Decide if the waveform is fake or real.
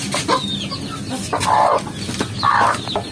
real